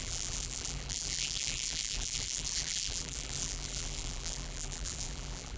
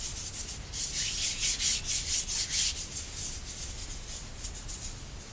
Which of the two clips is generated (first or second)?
first